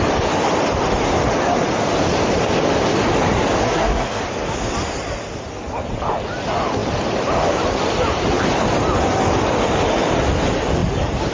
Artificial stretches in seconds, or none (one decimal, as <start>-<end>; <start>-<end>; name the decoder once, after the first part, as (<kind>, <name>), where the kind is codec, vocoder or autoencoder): 3.6-4.2 (codec, SNAC)